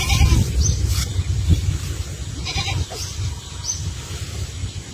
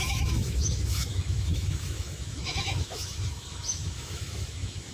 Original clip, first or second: first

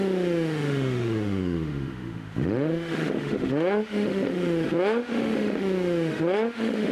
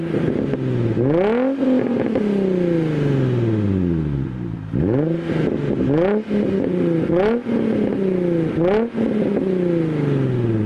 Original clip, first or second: second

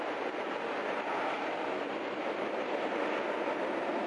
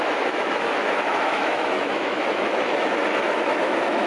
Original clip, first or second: first